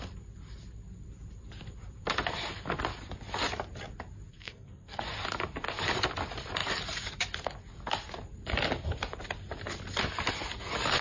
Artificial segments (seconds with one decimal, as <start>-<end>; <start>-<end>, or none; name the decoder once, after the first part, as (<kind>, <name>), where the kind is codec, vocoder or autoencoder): 4.3-5.0 (codec, SNAC)